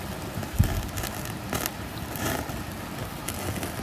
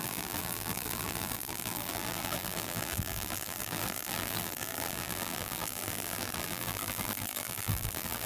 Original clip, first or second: first